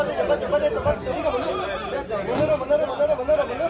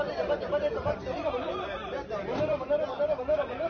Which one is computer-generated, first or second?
second